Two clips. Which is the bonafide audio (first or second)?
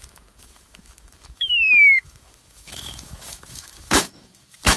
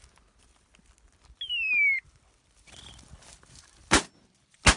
second